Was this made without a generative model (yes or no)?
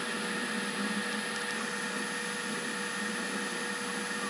yes